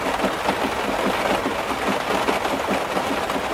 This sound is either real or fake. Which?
real